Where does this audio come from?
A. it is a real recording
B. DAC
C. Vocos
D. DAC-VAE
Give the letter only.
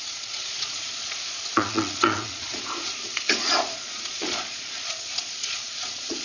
C